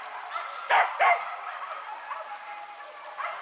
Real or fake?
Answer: real